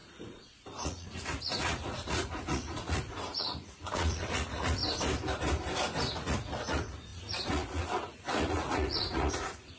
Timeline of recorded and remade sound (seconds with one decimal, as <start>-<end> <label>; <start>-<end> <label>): 0.0-4.8 remade; 4.8-6.1 recorded; 6.1-9.8 remade